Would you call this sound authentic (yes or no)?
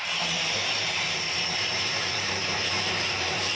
no